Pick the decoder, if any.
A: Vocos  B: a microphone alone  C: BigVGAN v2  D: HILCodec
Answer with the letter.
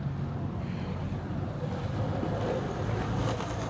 B